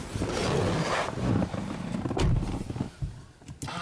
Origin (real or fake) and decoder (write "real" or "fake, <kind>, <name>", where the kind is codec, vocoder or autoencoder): real